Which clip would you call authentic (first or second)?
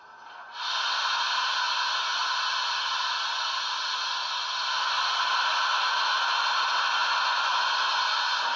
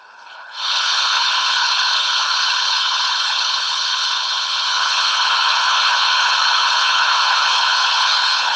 first